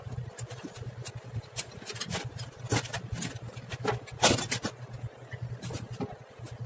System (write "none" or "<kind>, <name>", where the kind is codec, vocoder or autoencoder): none